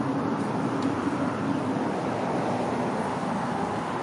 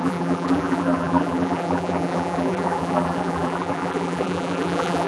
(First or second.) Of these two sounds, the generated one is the second